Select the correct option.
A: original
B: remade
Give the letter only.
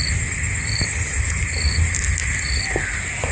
A